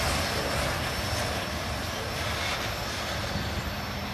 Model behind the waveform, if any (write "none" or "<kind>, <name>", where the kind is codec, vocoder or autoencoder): none